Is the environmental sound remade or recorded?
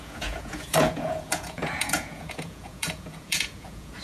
remade